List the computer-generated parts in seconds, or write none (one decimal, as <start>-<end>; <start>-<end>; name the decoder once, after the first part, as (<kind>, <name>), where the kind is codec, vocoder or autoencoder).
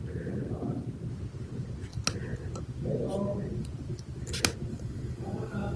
4.7-5.8 (codec, DAC)